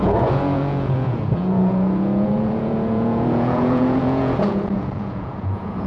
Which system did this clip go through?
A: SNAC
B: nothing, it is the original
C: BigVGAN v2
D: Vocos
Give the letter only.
D